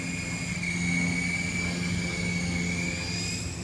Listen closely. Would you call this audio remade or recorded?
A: recorded